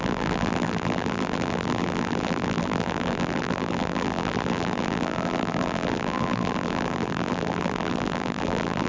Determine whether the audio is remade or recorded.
remade